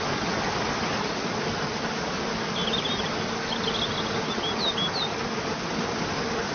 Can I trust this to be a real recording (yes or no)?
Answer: yes